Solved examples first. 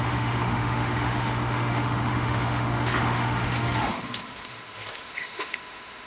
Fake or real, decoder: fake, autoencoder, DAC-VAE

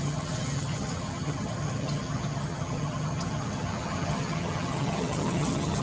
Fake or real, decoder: fake, vocoder, HiFi-GAN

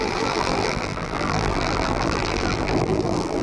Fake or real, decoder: fake, vocoder, BigVGAN v2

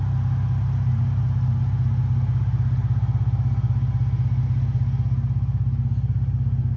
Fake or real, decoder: real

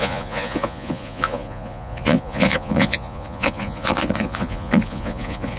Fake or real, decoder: fake, vocoder, Vocos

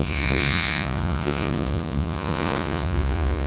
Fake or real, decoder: fake, vocoder, Vocos